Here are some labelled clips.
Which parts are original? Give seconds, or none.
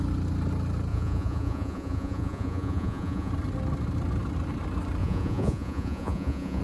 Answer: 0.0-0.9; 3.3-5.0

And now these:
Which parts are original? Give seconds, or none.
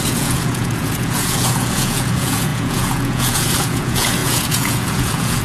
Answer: none